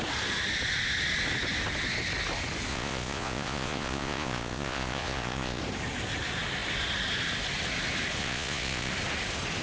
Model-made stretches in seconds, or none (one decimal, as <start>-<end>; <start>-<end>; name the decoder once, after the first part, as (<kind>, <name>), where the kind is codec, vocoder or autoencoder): 2.7-5.6 (vocoder, Vocos); 8.2-8.9